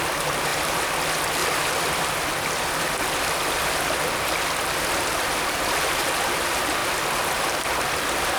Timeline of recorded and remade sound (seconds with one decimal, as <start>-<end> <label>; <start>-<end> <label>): 0.0-0.5 recorded; 0.5-1.0 remade; 1.0-1.4 recorded; 1.4-2.9 remade; 2.9-8.4 recorded